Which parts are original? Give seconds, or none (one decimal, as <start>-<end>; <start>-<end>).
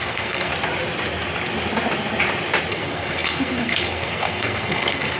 0.5-2.7